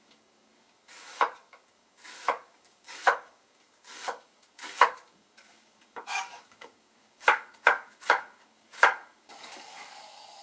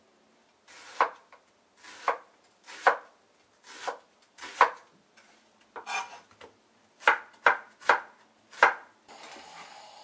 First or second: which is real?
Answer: second